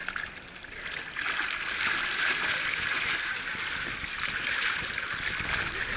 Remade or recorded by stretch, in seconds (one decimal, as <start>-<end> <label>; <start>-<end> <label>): 0.0-6.0 recorded